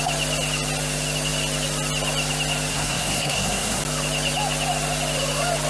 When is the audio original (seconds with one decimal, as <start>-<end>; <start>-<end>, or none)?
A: 0.0-2.7; 3.8-5.7